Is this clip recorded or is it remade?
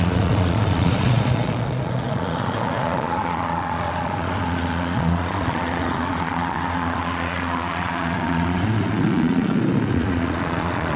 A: remade